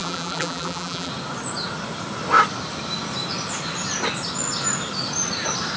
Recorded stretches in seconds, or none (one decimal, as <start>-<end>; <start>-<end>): 1.1-5.8

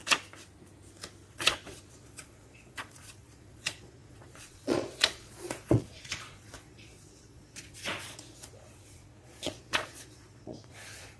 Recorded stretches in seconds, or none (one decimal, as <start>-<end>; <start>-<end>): 0.0-1.3